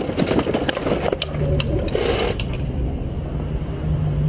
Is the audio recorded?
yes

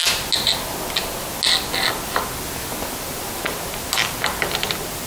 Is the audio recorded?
yes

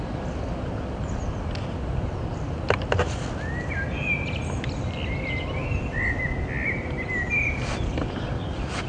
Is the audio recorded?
yes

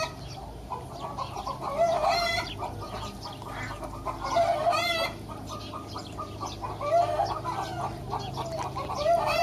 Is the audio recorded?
no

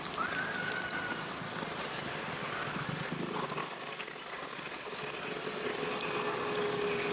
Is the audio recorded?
yes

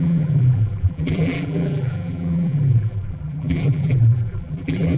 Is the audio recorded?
no